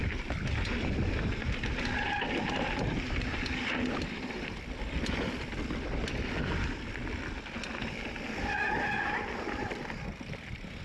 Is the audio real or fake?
real